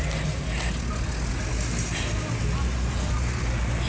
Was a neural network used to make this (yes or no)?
no